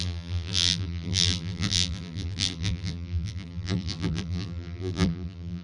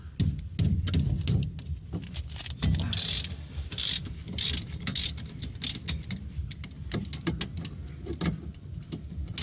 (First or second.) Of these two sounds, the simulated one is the first